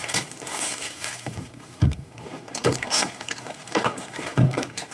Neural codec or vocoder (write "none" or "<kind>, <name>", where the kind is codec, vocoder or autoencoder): codec, SNAC